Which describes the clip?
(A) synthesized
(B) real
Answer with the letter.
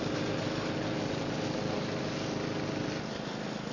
B